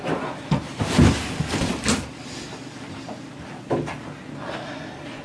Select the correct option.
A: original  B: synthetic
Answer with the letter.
A